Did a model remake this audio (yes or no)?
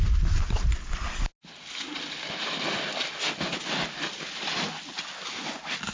no